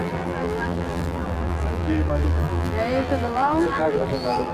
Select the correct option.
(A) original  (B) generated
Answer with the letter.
B